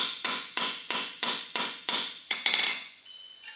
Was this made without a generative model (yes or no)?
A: no